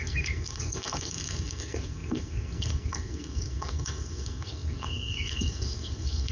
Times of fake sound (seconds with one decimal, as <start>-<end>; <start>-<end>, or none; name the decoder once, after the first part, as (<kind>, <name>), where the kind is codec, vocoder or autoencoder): 0.0-6.3 (codec, SNAC)